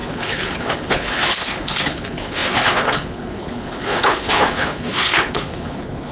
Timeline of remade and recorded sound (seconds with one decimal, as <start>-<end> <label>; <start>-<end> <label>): 0.0-6.1 remade